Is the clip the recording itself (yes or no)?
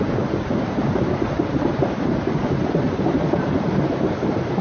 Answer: no